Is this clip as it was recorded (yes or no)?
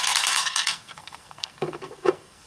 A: no